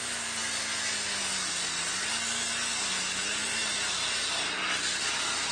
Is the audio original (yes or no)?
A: yes